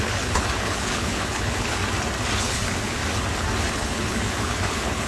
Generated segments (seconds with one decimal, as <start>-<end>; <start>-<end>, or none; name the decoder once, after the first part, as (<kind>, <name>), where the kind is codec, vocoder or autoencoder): 0.0-1.8 (codec, HILCodec); 2.4-3.0; 3.7-5.1